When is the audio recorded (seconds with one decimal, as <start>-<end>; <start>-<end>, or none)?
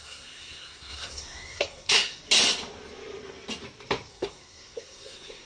2.2-4.1